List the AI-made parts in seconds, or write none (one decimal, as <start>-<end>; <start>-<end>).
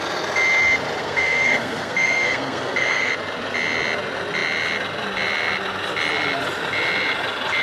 1.0-3.1